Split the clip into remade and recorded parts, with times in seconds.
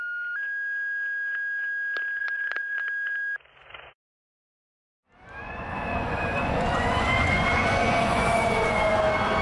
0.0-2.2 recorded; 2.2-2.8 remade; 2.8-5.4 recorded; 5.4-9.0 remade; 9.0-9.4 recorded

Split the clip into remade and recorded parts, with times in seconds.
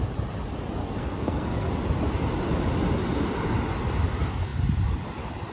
0.0-0.8 recorded; 0.8-1.7 remade; 1.7-5.5 recorded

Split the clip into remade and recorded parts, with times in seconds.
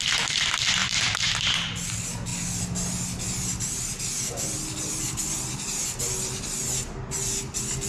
0.0-0.8 recorded; 0.8-1.3 remade; 1.3-7.9 recorded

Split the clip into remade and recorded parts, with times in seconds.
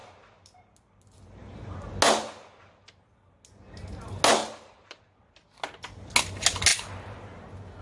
0.0-4.4 recorded; 4.4-5.0 remade; 5.0-7.8 recorded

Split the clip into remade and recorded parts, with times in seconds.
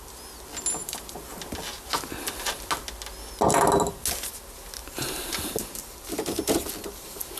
0.0-7.4 recorded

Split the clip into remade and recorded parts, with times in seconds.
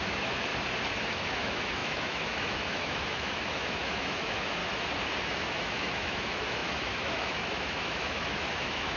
0.0-0.5 remade; 0.5-1.1 recorded; 1.1-4.6 remade; 4.6-5.2 recorded; 5.2-9.0 remade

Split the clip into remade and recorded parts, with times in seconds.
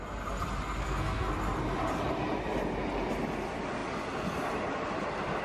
0.0-0.8 recorded; 0.8-1.3 remade; 1.3-5.4 recorded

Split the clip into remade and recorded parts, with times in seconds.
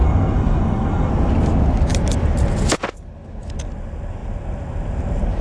0.0-1.1 remade; 1.1-5.4 recorded